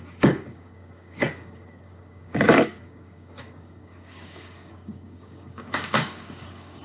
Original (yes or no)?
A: no